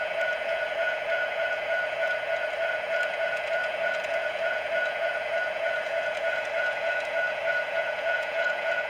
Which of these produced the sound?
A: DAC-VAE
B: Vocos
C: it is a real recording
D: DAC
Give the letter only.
B